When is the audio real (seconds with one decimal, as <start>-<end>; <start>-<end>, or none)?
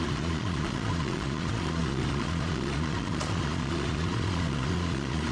none